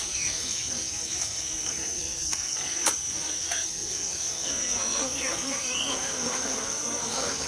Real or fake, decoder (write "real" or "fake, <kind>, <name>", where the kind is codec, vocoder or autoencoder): fake, codec, SNAC